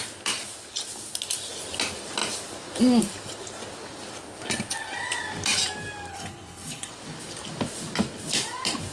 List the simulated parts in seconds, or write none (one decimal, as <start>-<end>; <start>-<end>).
6.1-6.9